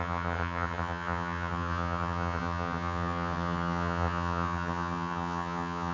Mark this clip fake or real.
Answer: fake